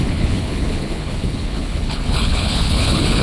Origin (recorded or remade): remade